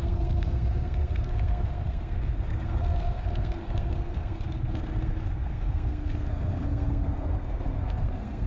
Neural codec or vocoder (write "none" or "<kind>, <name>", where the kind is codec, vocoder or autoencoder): codec, SNAC